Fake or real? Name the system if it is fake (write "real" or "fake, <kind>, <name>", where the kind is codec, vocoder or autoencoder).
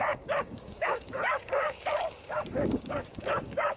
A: fake, codec, DAC